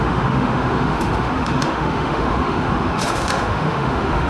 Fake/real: fake